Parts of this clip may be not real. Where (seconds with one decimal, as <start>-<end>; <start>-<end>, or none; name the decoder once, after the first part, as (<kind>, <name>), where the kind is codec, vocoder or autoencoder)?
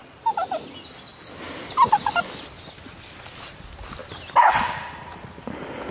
none